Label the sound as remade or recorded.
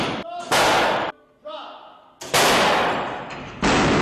recorded